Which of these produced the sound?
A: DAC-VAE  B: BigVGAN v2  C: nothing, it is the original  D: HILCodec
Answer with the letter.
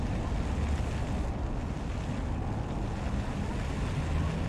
C